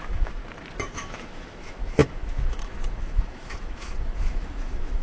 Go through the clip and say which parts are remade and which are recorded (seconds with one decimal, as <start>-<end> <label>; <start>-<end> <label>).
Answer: 0.0-0.4 remade; 0.4-0.9 recorded; 0.9-5.0 remade